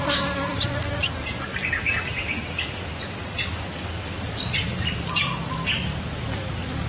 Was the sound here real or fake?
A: real